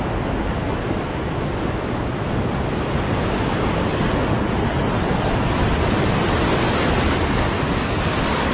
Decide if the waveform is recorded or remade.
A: recorded